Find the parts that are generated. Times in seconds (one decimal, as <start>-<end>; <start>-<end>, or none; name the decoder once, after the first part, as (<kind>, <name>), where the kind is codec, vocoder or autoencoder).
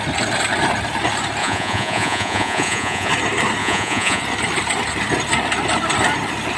1.4-3.1 (vocoder, Vocos); 3.6-4.2